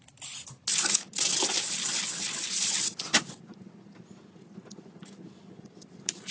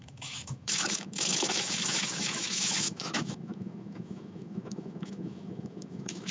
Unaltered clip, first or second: first